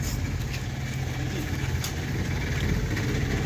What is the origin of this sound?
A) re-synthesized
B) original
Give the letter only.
B